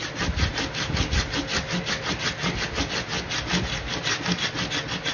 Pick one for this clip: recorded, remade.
recorded